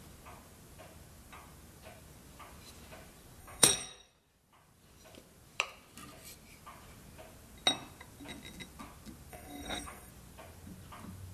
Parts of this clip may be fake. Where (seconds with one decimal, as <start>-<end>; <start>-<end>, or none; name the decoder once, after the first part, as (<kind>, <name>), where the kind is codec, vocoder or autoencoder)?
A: 3.4-4.1 (codec, SNAC); 9.3-10.1